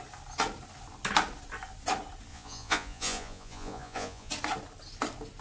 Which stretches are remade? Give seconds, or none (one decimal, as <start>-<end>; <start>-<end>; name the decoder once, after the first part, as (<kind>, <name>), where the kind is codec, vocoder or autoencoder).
2.3-4.3 (vocoder, Vocos)